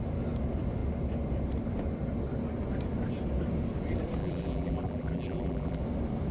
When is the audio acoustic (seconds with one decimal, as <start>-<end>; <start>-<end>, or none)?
0.0-4.2; 5.8-6.3